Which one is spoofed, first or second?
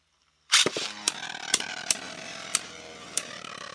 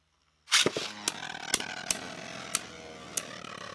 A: first